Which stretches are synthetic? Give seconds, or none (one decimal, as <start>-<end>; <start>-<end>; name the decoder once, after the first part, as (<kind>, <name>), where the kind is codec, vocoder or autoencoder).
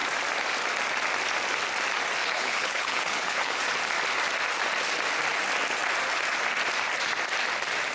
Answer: 2.2-3.6 (codec, HILCodec)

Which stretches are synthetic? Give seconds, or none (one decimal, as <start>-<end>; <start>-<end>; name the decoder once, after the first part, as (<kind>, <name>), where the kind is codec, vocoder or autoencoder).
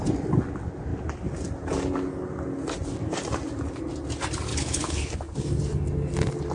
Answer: 4.5-5.6 (codec, HILCodec)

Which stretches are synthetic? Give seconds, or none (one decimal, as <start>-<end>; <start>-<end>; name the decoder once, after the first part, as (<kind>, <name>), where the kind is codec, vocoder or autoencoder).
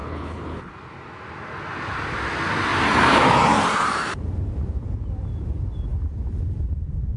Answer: 0.0-0.7 (codec, HILCodec)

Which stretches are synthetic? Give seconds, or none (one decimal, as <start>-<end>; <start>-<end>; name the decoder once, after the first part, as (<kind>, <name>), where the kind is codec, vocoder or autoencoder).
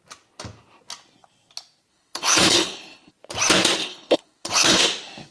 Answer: 1.9-3.1 (codec, HILCodec); 3.8-4.8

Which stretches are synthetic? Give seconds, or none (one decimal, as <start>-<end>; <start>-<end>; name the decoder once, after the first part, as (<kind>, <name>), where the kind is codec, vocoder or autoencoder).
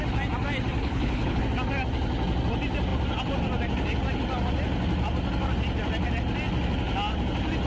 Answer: 0.8-1.4 (codec, HILCodec)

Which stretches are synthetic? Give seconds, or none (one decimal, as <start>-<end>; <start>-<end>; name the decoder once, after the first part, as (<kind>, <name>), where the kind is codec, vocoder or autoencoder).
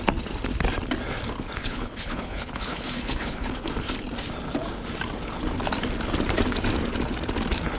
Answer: 1.6-3.7 (codec, HILCodec)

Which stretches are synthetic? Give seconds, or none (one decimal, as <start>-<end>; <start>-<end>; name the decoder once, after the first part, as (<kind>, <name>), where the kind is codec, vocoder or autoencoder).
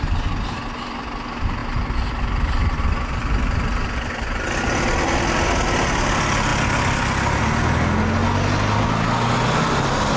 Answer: none